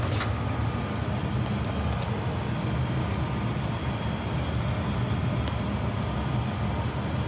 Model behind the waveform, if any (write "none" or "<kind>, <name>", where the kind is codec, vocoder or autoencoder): none